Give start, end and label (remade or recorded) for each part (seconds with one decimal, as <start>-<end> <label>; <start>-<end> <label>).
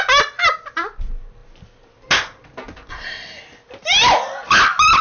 0.0-5.0 recorded